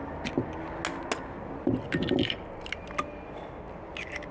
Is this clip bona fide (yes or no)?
yes